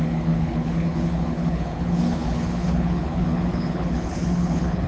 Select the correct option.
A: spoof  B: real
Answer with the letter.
A